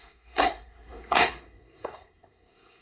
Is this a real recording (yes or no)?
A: no